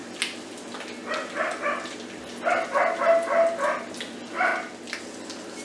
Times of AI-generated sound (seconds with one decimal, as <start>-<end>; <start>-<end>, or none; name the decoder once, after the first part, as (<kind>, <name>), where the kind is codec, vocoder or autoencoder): none